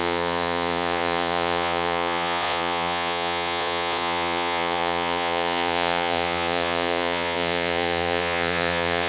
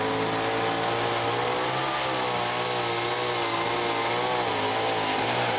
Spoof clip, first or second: first